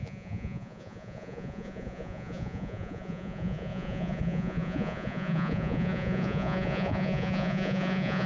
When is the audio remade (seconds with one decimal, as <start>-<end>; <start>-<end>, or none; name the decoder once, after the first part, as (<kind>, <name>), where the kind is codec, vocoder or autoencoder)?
0.0-8.3 (vocoder, Vocos)